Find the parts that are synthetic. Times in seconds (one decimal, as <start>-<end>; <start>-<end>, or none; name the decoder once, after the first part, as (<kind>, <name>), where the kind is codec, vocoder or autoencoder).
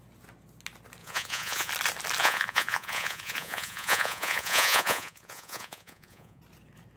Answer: 1.0-1.7 (vocoder, Vocos); 2.2-6.4